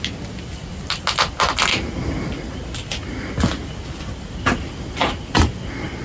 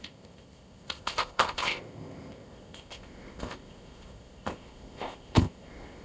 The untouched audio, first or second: first